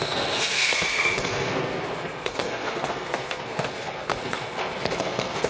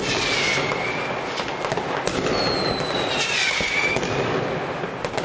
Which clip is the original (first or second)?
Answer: second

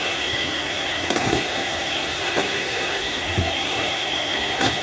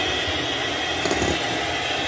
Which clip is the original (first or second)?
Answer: second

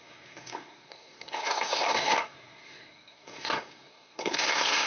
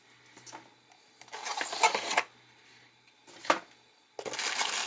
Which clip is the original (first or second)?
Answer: second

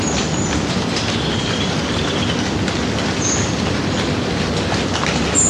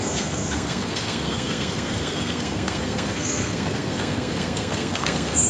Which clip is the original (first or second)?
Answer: first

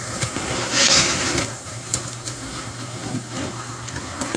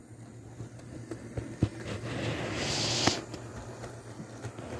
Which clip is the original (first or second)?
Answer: second